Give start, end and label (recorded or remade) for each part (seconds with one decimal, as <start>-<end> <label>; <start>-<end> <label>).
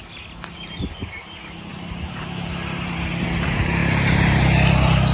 0.0-1.7 recorded; 1.7-3.2 remade; 3.2-3.8 recorded; 3.8-4.4 remade; 4.4-5.1 recorded